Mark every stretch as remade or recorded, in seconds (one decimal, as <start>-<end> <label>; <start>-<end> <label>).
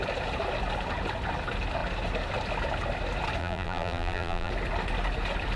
0.0-3.4 recorded; 3.4-4.5 remade; 4.5-5.6 recorded